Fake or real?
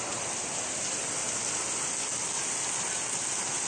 real